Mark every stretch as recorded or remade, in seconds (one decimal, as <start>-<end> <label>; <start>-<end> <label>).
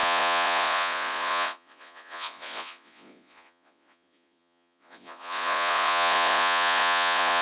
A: 0.0-7.4 remade